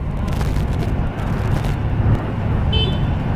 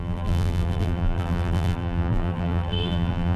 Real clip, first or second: first